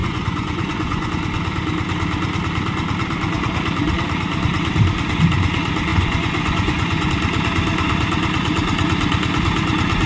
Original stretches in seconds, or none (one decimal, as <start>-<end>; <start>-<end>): 1.1-5.9; 7.1-10.1